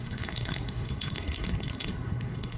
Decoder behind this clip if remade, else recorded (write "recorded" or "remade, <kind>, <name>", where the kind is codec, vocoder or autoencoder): remade, codec, SNAC